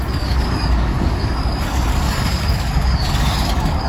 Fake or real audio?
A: fake